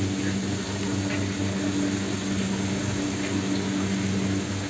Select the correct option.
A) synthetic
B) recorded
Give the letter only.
B